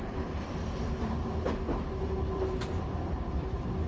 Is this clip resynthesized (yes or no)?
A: no